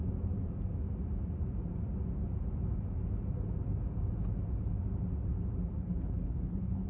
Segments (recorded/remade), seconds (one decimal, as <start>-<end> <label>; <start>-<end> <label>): 0.0-5.7 recorded; 5.7-6.9 remade